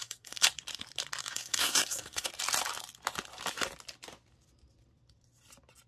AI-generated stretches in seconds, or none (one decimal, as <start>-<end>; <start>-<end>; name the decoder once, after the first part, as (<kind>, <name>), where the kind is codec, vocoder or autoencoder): 0.0-0.5 (codec, SNAC); 1.2-2.3

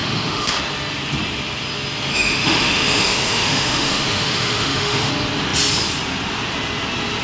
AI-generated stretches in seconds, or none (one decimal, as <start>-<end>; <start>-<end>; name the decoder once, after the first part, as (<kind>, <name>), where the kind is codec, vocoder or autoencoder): 0.0-0.6 (autoencoder, DAC-VAE); 2.1-5.1

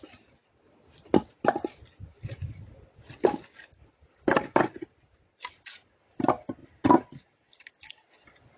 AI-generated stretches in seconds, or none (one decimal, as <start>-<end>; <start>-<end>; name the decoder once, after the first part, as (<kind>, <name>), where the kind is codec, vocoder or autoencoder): none

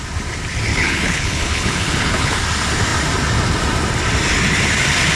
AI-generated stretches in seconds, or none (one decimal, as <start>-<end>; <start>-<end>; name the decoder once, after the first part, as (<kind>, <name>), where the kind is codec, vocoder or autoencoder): 0.7-2.4 (codec, HILCodec)

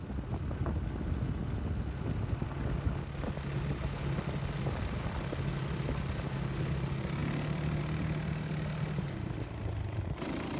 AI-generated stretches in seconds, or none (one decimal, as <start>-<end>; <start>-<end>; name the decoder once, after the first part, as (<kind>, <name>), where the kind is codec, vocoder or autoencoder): none

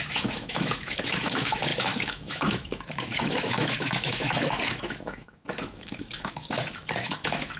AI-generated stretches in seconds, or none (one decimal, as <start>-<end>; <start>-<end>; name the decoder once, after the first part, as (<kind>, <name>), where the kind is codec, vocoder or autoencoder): 0.0-7.6 (autoencoder, DAC-VAE)

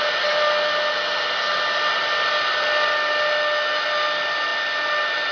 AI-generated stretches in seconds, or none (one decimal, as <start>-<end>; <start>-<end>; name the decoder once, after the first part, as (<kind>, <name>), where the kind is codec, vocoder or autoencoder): none